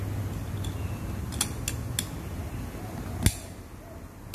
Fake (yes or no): no